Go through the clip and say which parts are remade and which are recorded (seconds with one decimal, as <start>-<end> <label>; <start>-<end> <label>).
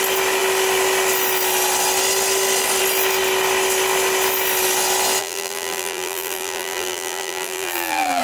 0.0-5.2 recorded; 5.2-8.2 remade